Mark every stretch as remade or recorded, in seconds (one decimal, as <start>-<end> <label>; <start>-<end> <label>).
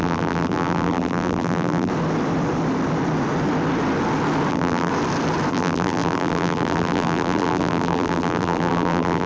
0.0-1.9 remade; 1.9-4.5 recorded; 4.5-4.9 remade; 4.9-5.5 recorded; 5.5-9.3 remade